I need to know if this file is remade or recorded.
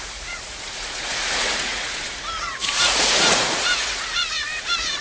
remade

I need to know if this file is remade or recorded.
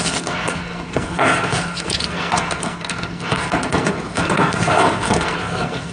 remade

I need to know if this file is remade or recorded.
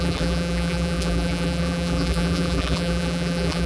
remade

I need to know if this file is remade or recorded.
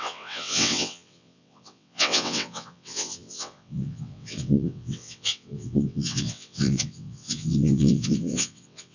remade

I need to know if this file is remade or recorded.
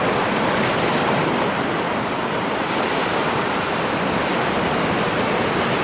recorded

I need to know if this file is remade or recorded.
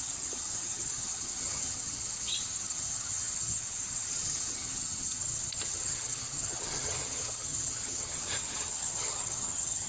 remade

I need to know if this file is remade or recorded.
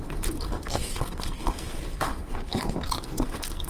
remade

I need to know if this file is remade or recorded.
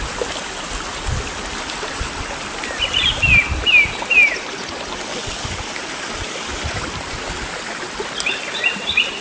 recorded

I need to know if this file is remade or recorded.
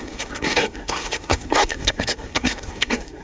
remade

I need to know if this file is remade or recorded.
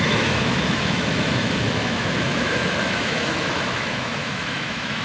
remade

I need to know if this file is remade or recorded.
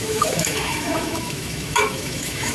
remade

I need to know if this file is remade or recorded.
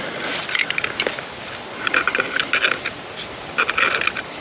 recorded